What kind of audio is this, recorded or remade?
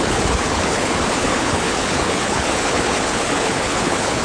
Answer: remade